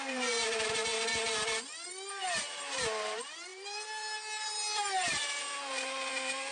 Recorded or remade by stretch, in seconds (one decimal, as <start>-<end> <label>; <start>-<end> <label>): 0.0-0.8 remade; 0.8-2.1 recorded; 2.1-6.5 remade